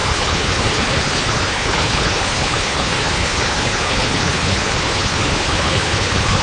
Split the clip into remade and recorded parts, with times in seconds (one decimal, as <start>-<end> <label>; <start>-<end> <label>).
0.0-6.4 remade